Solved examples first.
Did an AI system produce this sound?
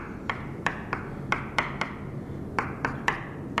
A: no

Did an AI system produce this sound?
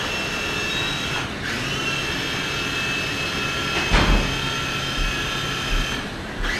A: no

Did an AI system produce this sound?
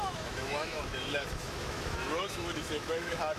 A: yes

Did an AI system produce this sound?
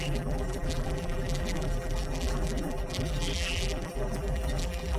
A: yes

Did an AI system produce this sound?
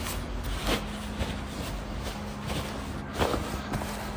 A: no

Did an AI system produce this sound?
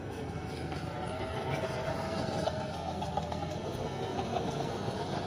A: yes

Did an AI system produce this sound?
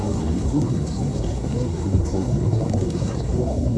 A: yes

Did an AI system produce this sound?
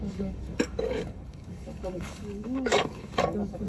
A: yes